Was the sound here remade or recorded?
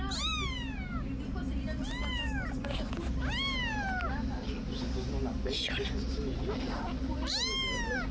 recorded